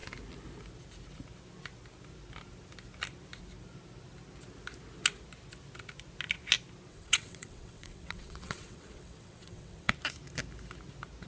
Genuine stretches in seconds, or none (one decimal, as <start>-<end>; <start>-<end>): 0.0-6.9; 9.9-11.3